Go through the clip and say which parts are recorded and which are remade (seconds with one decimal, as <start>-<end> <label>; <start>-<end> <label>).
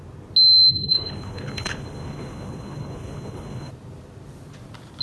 0.0-0.7 recorded; 0.7-3.7 remade; 3.7-5.0 recorded